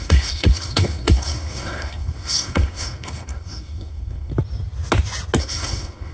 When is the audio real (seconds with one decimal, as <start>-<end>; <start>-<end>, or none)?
4.3-5.4